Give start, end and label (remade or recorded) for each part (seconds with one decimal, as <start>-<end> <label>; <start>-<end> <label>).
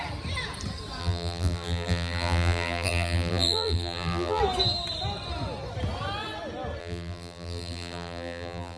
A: 0.0-1.0 recorded; 1.0-4.4 remade; 4.4-6.8 recorded; 6.8-8.8 remade